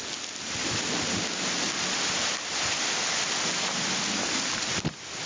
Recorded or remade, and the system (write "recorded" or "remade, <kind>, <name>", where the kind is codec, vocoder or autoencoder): recorded